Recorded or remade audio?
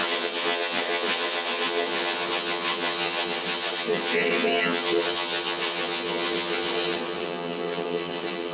remade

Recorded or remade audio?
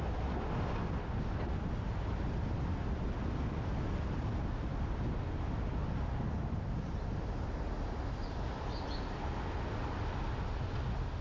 recorded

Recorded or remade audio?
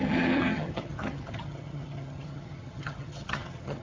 remade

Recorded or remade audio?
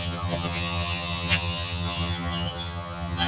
remade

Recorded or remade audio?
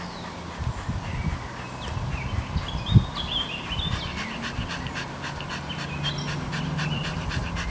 recorded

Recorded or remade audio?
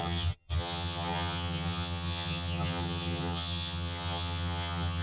remade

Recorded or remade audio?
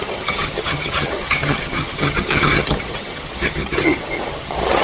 remade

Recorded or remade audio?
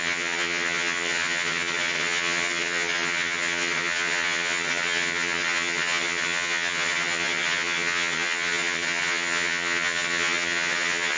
remade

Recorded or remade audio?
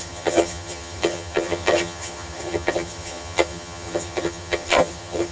remade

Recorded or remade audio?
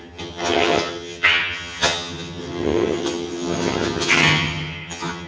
remade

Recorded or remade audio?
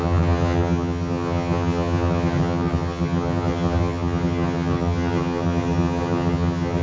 remade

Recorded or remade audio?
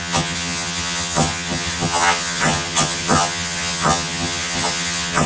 remade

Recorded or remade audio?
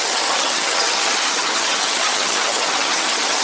remade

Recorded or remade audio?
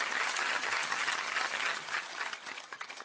remade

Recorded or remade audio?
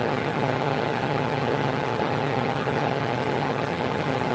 remade